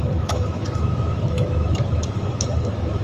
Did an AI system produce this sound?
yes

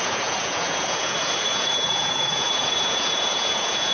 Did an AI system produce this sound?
yes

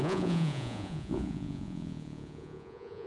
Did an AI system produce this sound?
yes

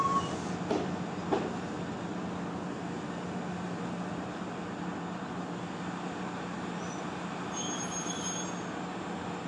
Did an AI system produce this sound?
no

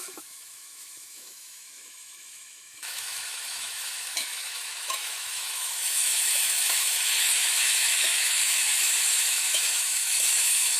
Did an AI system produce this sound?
yes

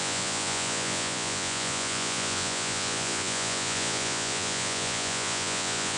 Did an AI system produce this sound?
yes